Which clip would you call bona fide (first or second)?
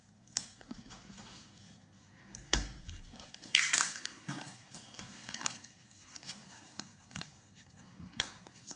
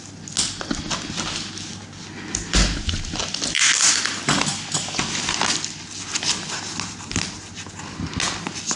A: second